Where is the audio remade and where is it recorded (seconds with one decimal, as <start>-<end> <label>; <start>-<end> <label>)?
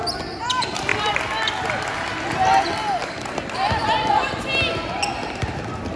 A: 0.0-6.0 recorded